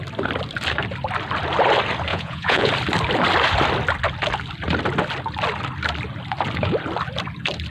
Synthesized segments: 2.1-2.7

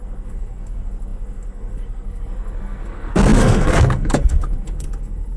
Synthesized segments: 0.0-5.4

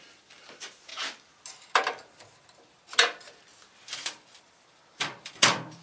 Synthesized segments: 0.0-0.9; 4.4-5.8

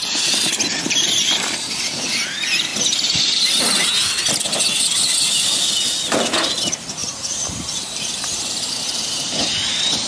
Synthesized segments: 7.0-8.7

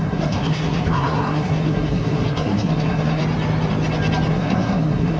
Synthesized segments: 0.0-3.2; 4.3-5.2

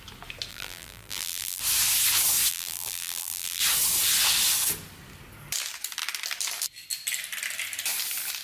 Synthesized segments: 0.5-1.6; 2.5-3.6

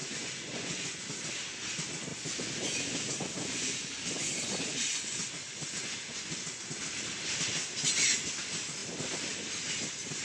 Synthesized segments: 0.0-1.0; 2.1-6.6

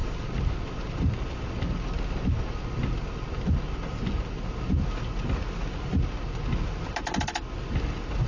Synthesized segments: none